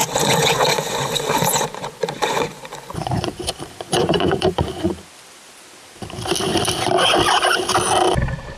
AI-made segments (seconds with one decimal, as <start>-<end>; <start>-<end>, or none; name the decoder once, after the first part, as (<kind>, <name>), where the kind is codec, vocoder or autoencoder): 0.0-4.9 (vocoder, Vocos)